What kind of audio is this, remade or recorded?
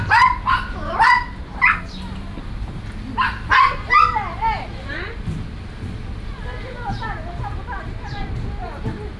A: recorded